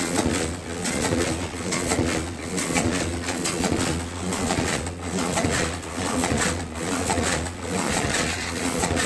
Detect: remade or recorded remade